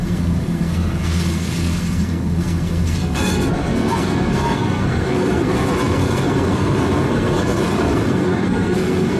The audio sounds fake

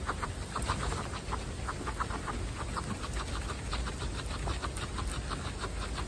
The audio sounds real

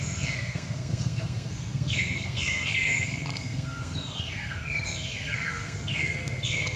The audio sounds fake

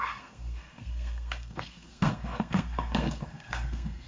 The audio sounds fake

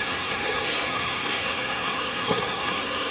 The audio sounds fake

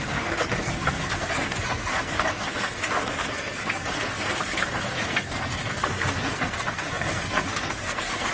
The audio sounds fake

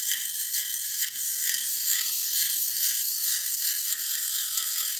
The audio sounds fake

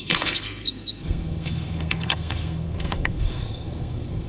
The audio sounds fake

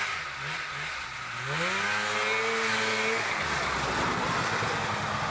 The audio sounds real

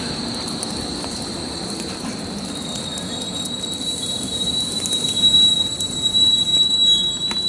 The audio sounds real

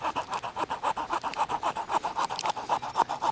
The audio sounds real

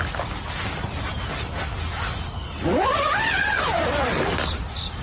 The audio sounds real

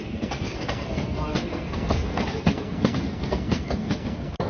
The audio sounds fake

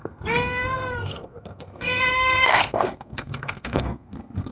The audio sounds fake